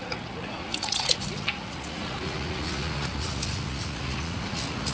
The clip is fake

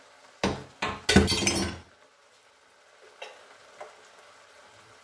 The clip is real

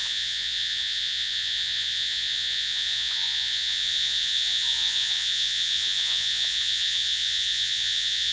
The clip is fake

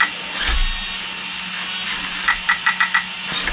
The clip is real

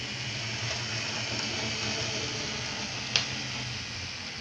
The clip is real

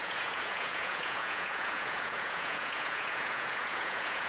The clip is fake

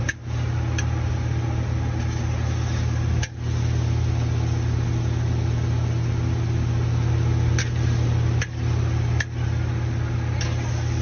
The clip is real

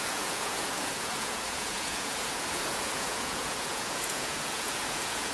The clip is fake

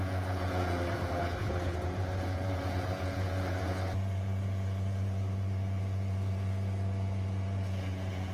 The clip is fake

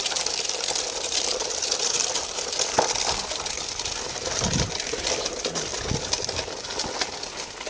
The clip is real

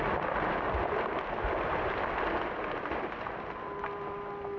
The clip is real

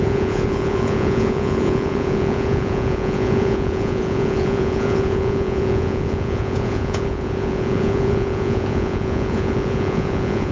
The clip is fake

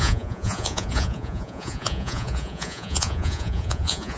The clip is fake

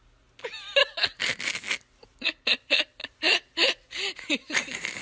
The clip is real